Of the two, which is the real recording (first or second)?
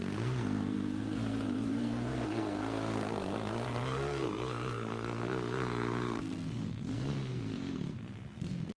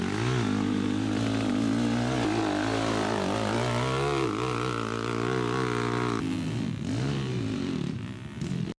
second